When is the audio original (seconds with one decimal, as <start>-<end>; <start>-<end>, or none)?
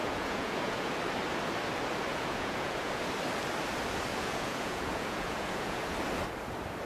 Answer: 1.0-2.1; 3.0-4.1; 5.8-6.9